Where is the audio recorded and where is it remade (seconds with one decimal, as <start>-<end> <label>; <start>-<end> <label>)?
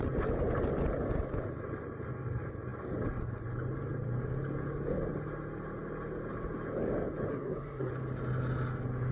0.0-7.3 recorded; 7.3-7.9 remade; 7.9-9.1 recorded